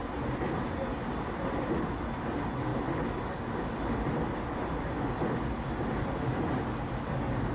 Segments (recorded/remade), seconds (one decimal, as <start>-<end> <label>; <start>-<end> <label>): 0.0-7.5 recorded